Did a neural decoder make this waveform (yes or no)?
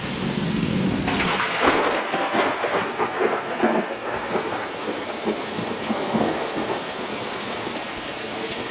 yes